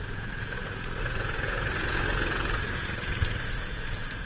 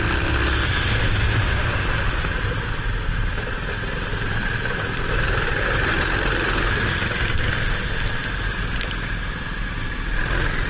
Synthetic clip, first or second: first